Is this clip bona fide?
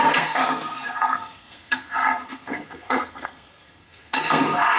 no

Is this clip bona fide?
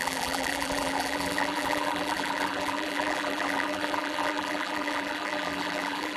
no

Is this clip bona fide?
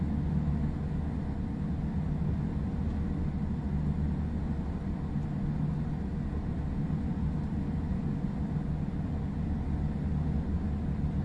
yes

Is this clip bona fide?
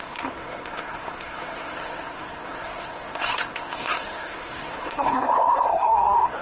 no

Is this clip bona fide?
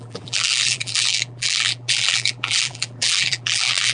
no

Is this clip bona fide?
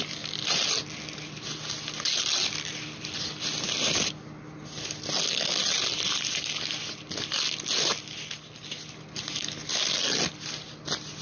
yes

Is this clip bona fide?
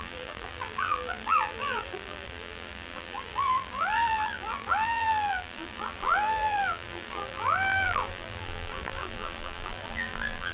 no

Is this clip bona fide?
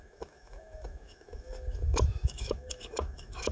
no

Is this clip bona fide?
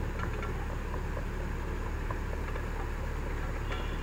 yes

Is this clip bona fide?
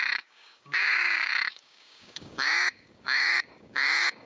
no